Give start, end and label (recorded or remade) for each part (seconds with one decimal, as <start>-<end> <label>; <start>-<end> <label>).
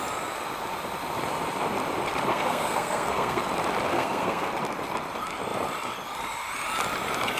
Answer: 0.0-2.3 recorded; 2.3-3.4 remade; 3.4-3.9 recorded; 3.9-4.5 remade; 4.5-7.4 recorded